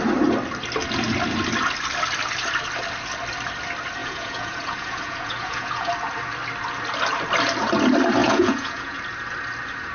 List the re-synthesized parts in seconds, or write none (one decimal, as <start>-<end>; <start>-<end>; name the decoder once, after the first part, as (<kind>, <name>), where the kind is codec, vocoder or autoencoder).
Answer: 4.0-5.9 (vocoder, Vocos); 8.2-9.0